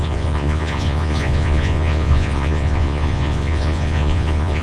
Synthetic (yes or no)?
yes